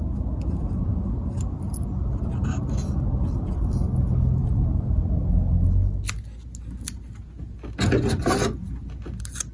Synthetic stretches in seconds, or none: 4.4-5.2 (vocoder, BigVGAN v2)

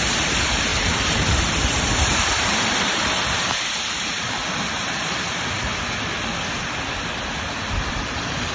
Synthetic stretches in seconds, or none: 0.0-4.4 (vocoder, BigVGAN v2); 7.9-8.5

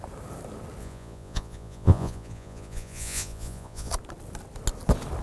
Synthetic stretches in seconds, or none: 0.8-3.9 (vocoder, Vocos)

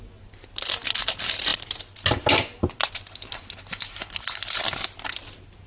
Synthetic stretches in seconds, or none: none

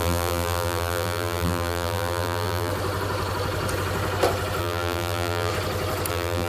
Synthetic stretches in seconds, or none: 0.0-2.7 (vocoder, BigVGAN v2); 4.6-5.5; 6.1-6.5

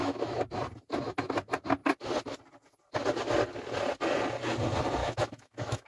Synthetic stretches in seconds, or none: 0.0-0.5 (autoencoder, DAC-VAE); 5.0-5.9

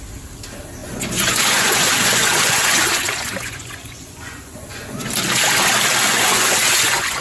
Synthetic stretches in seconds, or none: 0.8-5.1 (vocoder, Vocos); 6.1-7.2